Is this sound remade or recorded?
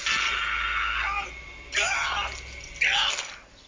recorded